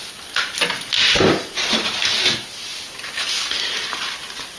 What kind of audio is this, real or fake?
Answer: real